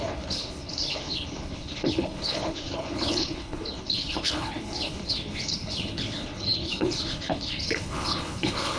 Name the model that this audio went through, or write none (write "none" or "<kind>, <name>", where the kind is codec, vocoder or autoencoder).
codec, HILCodec